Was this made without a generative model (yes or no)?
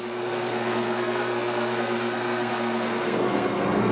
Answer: no